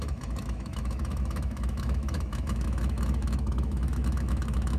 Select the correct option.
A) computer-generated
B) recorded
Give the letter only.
A